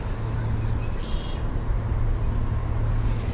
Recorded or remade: recorded